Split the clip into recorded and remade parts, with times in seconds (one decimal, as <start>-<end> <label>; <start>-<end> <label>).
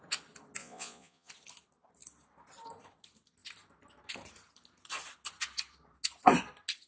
0.0-0.6 recorded; 0.6-1.3 remade; 1.3-6.9 recorded